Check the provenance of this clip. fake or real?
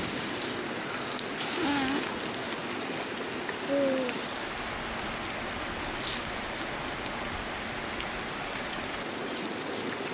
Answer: real